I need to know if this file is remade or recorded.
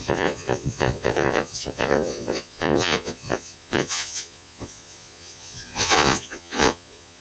remade